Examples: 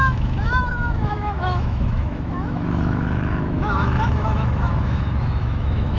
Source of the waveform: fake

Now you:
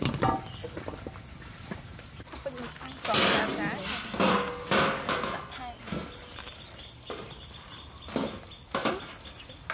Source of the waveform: real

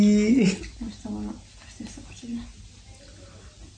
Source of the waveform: real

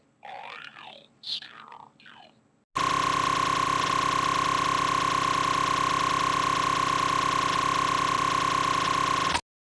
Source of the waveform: real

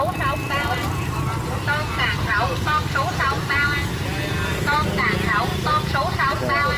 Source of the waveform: real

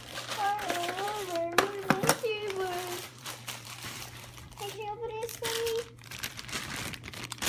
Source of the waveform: fake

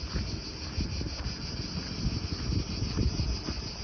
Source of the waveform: real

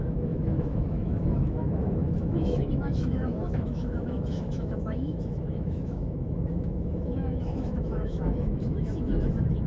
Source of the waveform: fake